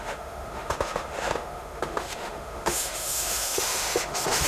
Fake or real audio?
fake